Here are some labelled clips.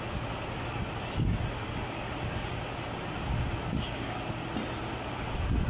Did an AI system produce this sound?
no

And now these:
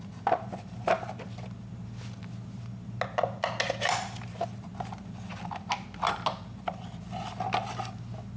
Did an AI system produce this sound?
no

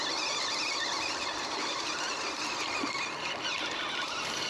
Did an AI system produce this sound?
no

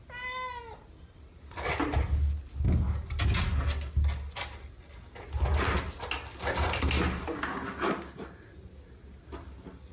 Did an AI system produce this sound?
no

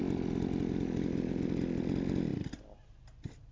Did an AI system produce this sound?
no